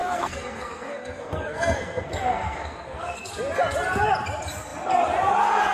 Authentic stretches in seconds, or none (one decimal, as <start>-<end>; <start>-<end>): 3.3-5.7